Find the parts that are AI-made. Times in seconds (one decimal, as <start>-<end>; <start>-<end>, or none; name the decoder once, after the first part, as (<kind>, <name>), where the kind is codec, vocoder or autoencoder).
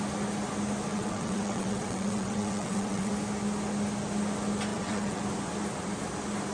0.9-3.1 (vocoder, WaveNeXt); 4.7-5.2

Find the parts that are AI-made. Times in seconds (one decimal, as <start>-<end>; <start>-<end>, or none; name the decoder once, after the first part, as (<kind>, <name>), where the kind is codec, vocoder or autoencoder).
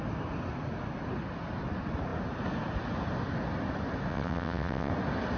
4.1-4.9 (vocoder, WaveNeXt)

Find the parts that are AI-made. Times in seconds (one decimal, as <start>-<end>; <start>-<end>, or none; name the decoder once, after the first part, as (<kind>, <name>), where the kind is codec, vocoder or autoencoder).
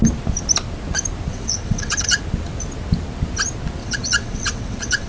1.3-2.2 (vocoder, WaveNeXt); 3.8-5.1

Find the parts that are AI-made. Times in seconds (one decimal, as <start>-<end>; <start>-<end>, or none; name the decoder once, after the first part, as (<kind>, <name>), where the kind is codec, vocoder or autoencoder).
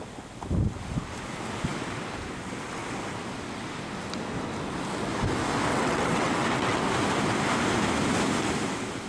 5.7-6.8 (vocoder, WaveNeXt)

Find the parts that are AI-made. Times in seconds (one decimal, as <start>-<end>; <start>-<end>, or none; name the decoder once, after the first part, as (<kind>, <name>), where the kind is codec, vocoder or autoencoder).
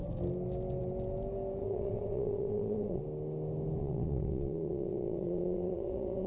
1.6-3.0 (vocoder, WaveNeXt); 3.8-6.3